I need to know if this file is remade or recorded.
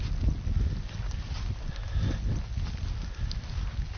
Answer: recorded